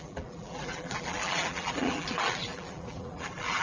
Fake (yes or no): yes